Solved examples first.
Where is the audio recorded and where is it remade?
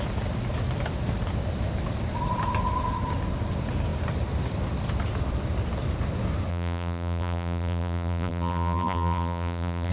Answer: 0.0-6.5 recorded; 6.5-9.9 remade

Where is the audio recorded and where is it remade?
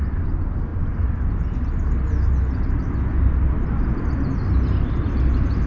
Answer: 0.0-5.7 recorded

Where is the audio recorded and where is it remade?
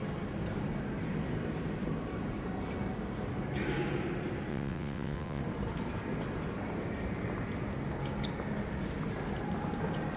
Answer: 0.0-4.5 recorded; 4.5-5.4 remade; 5.4-10.2 recorded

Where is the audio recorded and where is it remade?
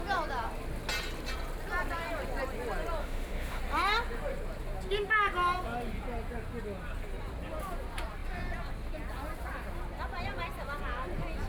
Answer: 0.0-3.0 recorded; 3.0-3.6 remade; 3.6-11.5 recorded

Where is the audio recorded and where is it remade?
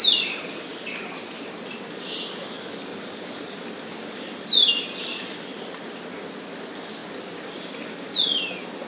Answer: 0.0-8.9 recorded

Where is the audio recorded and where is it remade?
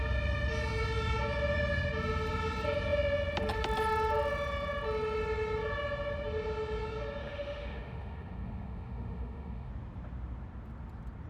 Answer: 0.0-7.2 recorded; 7.2-9.7 remade; 9.7-11.3 recorded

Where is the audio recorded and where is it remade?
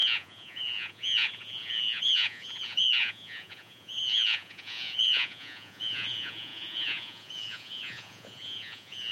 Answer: 0.0-9.1 remade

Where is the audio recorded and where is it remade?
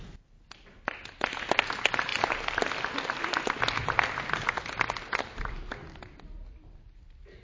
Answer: 0.0-7.4 recorded